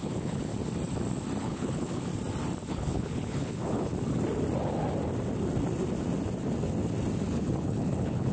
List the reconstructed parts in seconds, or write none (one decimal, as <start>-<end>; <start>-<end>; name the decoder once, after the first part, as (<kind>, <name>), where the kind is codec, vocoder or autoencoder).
0.0-0.5 (codec, HILCodec); 1.4-2.1; 2.7-3.9; 7.3-8.3